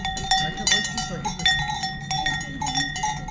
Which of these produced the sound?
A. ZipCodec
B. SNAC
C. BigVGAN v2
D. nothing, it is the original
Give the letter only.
D